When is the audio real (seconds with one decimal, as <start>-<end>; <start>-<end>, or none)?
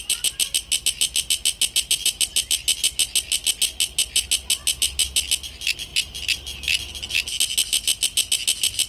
0.0-8.9